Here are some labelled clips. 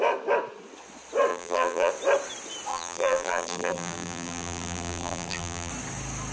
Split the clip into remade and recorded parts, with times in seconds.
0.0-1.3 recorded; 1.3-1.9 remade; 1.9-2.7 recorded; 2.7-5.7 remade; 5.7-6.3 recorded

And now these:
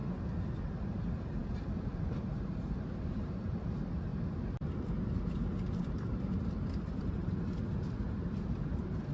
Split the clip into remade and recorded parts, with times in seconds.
0.0-0.6 recorded; 0.6-4.1 remade; 4.1-5.8 recorded; 5.8-9.1 remade